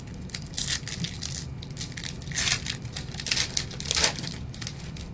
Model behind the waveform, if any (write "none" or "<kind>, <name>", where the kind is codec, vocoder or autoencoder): none